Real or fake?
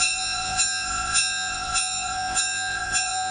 fake